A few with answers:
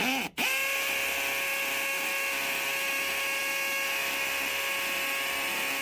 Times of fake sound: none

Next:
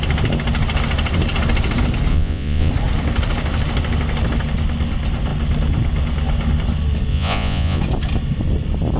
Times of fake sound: 2.1-2.7 (vocoder, Vocos); 7.1-7.8

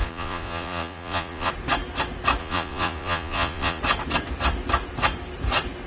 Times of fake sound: 0.0-1.5 (vocoder, Vocos); 2.4-3.8

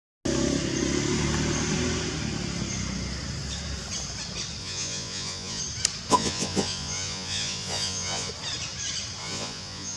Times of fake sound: 4.6-5.6 (vocoder, Vocos); 6.1-8.3; 9.2-10.0